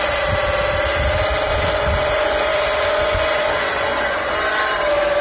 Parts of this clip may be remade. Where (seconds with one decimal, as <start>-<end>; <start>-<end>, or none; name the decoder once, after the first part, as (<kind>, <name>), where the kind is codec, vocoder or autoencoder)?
1.5-4.6 (vocoder, Vocos)